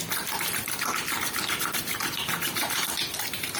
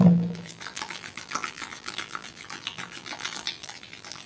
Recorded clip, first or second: first